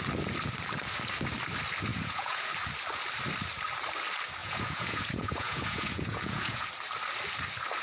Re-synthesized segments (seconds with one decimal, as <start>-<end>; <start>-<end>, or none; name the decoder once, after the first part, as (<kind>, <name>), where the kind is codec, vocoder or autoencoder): 1.9-2.5 (vocoder, Vocos); 4.4-6.7